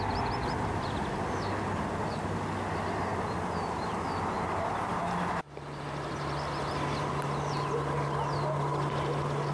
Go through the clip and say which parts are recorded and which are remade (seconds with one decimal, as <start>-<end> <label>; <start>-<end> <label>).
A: 0.0-9.5 recorded